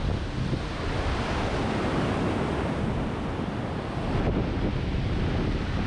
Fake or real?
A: real